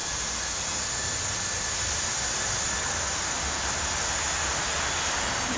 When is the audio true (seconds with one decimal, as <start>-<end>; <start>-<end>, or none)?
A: 0.0-5.6